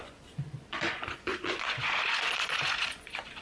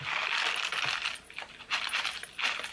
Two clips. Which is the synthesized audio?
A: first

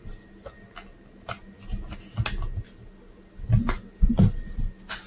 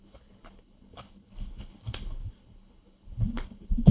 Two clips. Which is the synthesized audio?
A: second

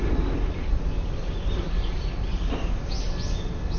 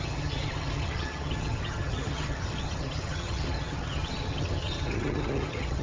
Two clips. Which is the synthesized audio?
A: second